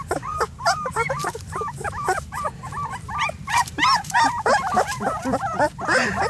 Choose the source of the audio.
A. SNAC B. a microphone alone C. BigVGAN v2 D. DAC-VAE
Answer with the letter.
C